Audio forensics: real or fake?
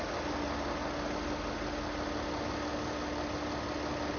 real